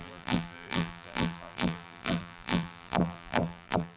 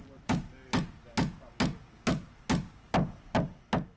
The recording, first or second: second